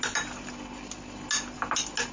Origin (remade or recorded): recorded